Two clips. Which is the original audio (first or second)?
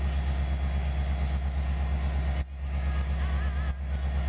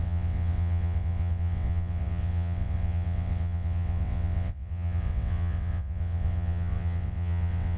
first